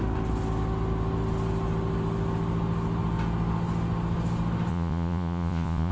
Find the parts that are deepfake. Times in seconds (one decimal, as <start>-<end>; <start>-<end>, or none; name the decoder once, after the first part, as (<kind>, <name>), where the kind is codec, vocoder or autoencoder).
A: 4.7-5.9 (vocoder, Vocos)